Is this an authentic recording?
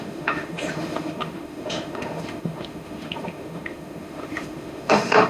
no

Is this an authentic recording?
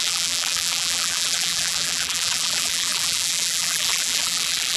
no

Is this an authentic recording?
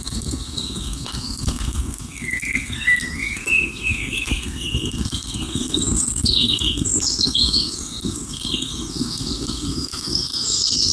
no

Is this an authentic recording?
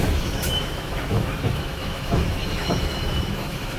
no